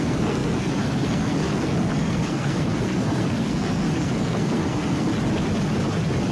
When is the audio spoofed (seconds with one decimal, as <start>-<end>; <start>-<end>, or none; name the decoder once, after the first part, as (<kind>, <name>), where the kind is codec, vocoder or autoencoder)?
0.0-5.1 (codec, SNAC)